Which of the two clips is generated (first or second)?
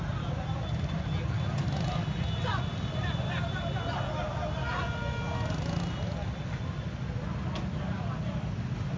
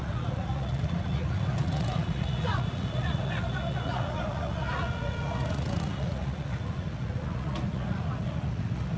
second